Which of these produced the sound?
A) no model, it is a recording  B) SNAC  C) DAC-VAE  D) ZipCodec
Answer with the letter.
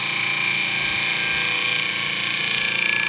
A